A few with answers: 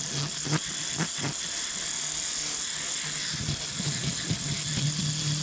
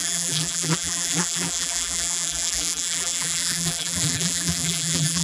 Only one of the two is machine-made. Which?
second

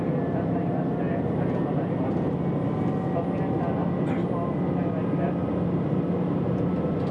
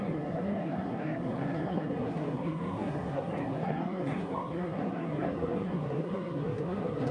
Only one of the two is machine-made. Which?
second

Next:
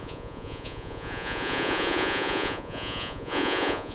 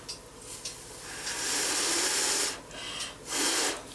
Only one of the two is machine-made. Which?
first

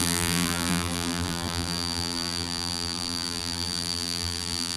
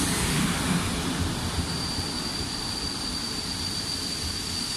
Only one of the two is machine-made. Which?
first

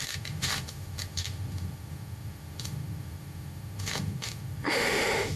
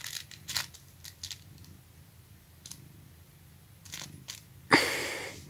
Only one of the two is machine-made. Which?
first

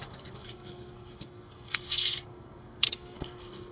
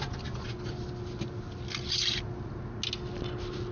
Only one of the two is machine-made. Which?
first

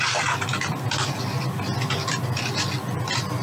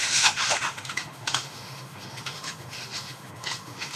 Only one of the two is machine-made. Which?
second